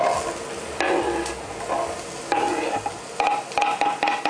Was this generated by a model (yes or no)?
no